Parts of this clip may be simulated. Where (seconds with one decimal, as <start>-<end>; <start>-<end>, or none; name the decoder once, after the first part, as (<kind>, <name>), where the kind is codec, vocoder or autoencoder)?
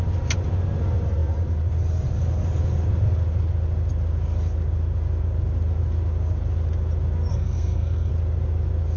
7.3-8.1 (codec, SNAC)